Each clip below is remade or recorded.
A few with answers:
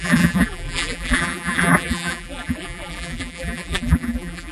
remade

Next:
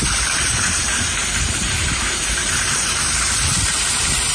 remade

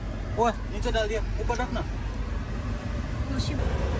recorded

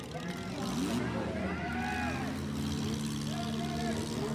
recorded